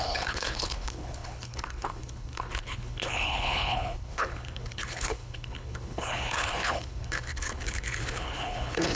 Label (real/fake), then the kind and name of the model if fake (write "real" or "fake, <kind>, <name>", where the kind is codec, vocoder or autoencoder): fake, codec, HILCodec